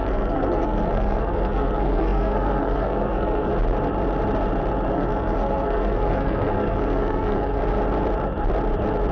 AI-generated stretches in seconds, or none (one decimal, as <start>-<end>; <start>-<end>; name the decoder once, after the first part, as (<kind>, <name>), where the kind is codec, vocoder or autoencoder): 0.0-3.5 (codec, SNAC); 4.9-7.6